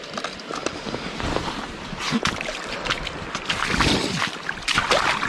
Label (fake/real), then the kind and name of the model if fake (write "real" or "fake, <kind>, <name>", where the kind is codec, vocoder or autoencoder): real